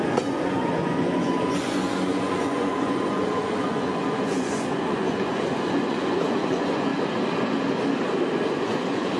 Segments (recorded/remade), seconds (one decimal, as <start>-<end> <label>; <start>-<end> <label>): 0.0-6.9 remade; 6.9-8.5 recorded; 8.5-9.2 remade